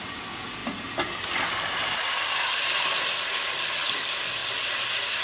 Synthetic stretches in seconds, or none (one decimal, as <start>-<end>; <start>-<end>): none

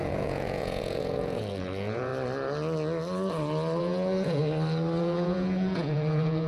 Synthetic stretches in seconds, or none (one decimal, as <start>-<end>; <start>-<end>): 0.0-2.1; 3.8-4.4; 5.0-6.5

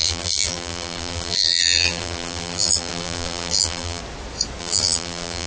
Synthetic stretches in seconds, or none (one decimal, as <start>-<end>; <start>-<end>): 0.0-4.0; 4.6-5.5

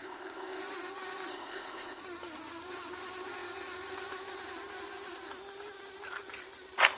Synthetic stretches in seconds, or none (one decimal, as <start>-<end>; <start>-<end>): 0.0-0.6; 1.3-2.0

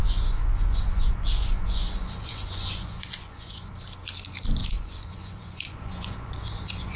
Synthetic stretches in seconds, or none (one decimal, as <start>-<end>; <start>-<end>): 0.0-3.7; 4.6-7.0

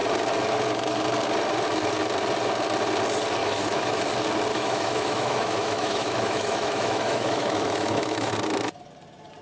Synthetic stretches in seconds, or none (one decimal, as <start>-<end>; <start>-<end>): 3.4-4.0; 4.5-8.3